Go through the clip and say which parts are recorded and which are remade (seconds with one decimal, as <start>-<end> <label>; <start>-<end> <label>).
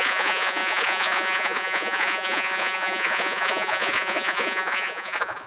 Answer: 0.0-5.5 remade